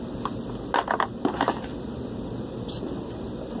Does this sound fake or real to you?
real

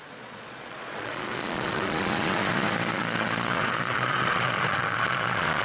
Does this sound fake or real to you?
fake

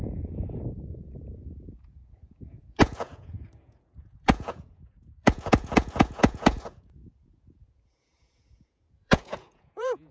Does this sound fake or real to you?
fake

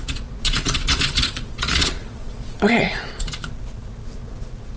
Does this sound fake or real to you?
fake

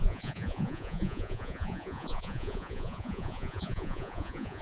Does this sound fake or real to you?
fake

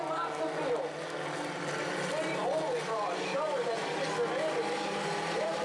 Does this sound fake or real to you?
real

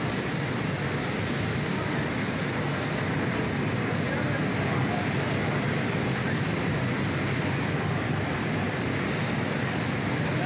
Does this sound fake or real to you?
real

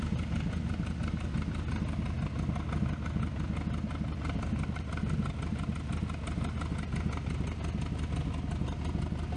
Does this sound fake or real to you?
real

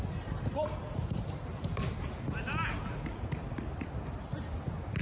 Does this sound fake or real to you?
real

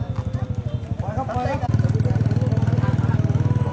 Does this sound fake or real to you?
real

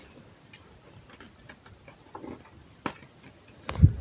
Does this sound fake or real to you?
real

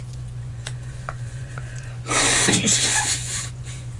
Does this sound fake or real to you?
fake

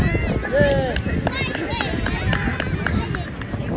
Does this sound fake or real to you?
real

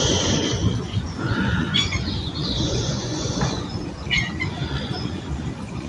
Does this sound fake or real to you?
fake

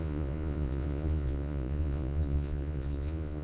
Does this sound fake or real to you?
fake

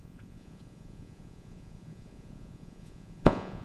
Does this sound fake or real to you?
fake